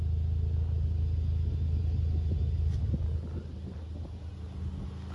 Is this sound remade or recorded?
recorded